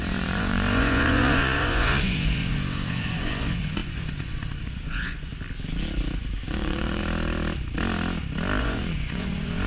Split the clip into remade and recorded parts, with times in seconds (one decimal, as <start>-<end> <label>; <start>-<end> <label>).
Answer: 0.0-5.3 remade; 5.3-6.5 recorded; 6.5-7.0 remade; 7.0-8.6 recorded; 8.6-9.7 remade